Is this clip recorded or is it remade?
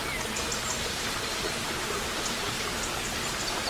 recorded